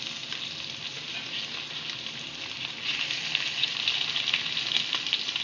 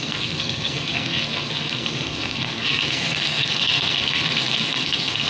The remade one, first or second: second